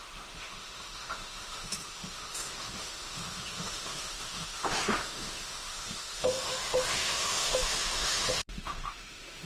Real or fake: fake